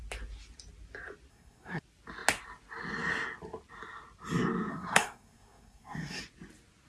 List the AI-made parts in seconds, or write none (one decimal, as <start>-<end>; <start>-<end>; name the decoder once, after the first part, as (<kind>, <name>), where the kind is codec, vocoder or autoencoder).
1.3-1.8 (codec, SNAC); 4.7-6.2